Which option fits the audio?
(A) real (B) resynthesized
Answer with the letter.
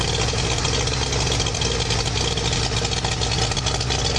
A